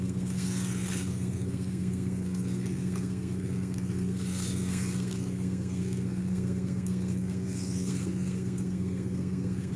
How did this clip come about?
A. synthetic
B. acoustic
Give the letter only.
A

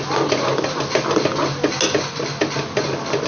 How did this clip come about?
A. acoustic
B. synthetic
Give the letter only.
A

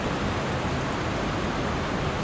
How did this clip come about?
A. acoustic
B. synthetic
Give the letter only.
A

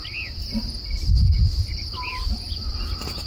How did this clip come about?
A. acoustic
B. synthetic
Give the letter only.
A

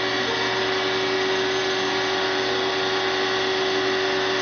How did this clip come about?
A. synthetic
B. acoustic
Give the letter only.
B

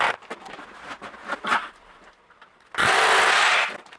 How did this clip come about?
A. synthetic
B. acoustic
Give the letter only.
B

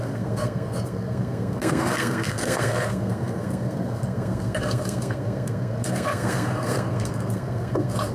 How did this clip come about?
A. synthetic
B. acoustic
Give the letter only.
A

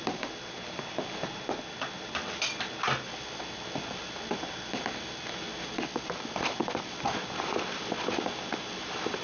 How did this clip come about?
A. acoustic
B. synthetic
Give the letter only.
A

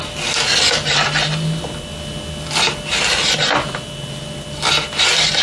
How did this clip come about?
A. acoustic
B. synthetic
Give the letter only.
A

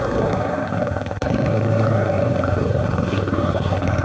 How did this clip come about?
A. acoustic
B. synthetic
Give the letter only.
B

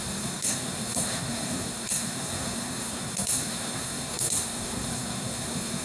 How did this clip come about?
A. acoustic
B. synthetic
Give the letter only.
B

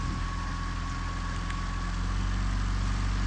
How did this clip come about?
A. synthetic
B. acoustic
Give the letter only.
B